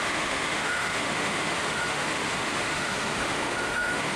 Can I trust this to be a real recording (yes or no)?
no